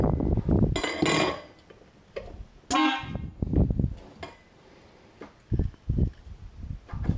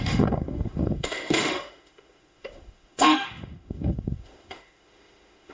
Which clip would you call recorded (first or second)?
first